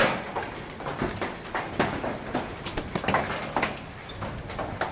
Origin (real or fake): real